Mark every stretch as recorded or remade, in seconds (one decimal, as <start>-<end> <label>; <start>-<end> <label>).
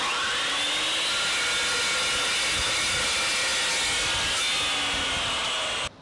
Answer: 0.0-6.0 recorded